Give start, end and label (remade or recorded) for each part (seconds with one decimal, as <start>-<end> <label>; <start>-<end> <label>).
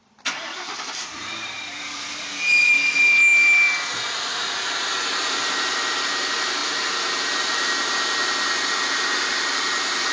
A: 0.0-2.2 remade; 2.2-6.6 recorded; 6.6-7.9 remade; 7.9-10.1 recorded